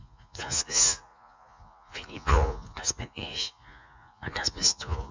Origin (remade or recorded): remade